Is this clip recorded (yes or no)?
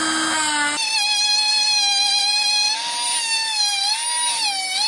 yes